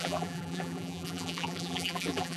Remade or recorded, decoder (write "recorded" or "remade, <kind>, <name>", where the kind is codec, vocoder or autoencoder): remade, vocoder, BigVGAN v2